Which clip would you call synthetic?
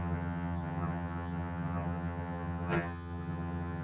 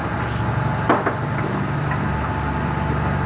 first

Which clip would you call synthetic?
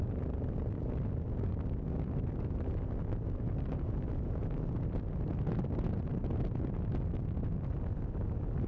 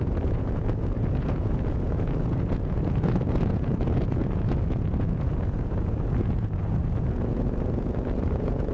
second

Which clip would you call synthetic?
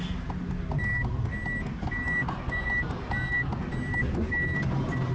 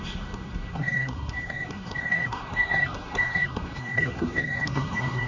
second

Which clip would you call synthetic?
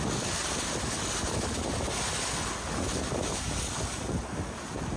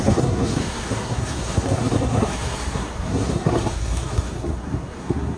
second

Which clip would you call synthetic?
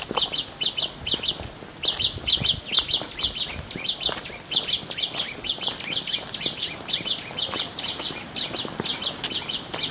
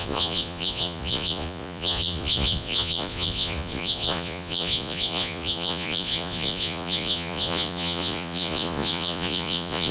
second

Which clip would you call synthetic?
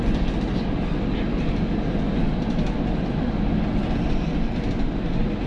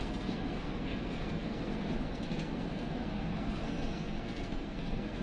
second